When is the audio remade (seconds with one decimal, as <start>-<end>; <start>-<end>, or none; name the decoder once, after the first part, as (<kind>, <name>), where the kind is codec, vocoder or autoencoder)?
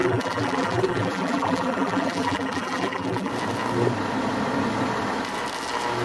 0.0-3.3 (vocoder, BigVGAN v2)